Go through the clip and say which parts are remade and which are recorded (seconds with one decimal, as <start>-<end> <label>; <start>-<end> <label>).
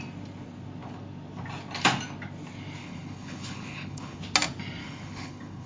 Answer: 0.0-2.8 recorded; 2.8-4.2 remade; 4.2-4.8 recorded; 4.8-5.7 remade